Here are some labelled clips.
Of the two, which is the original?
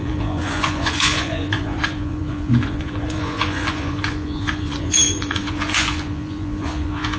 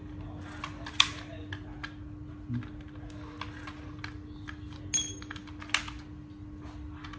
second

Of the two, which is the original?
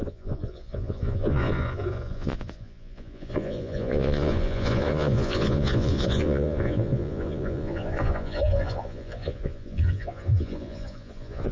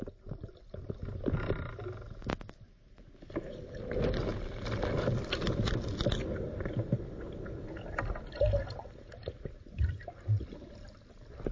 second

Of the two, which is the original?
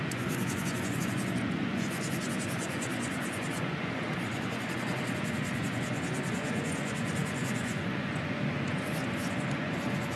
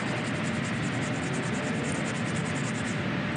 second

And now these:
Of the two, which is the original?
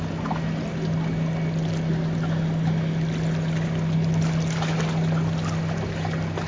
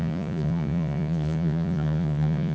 first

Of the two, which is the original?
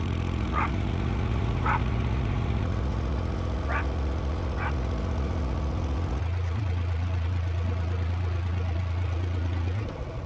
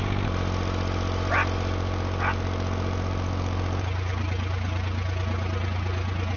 second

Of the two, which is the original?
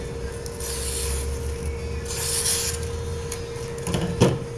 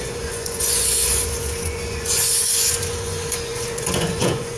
first